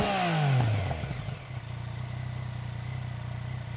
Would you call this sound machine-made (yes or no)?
no